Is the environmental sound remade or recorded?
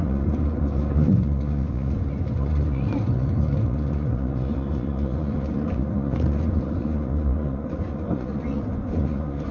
remade